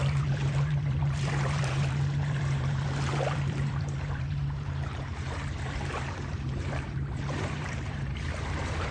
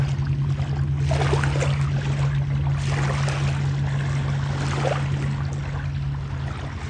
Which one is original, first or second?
second